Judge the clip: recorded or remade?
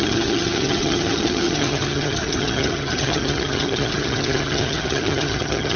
remade